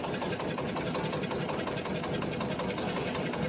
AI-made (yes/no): no